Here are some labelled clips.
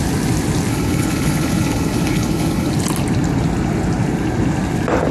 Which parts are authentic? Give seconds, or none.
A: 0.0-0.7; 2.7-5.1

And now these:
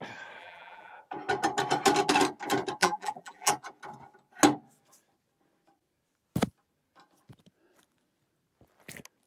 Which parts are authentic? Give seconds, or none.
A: 0.0-0.4; 0.9-2.8; 3.5-9.3

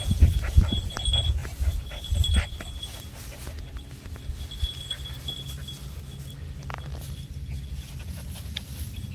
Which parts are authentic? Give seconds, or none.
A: 0.0-1.4; 2.6-9.1